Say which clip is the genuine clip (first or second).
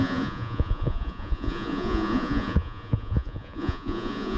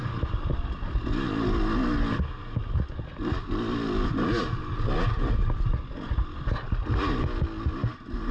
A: second